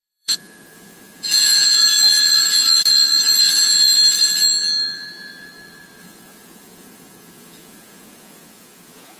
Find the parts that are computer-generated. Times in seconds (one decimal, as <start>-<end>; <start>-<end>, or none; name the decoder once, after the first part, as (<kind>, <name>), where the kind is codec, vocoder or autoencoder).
0.0-1.8 (vocoder, Vocos); 6.0-9.2